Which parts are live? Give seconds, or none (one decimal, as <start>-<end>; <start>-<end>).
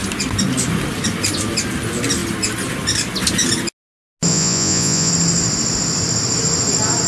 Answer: 0.0-4.3; 5.1-7.1